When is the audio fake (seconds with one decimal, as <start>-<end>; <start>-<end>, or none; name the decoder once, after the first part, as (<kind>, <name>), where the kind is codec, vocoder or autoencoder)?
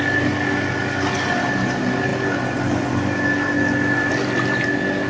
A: none